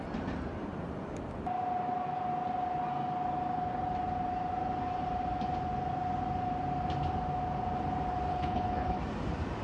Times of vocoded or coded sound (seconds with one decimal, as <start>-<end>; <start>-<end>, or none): 8.3-9.0